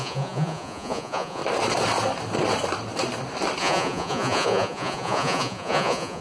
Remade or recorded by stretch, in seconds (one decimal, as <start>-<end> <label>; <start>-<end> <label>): 0.0-1.4 remade; 1.4-3.6 recorded; 3.6-6.2 remade